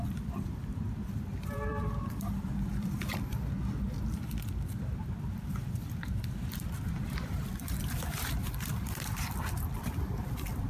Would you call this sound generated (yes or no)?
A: yes